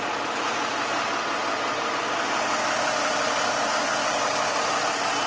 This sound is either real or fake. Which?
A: real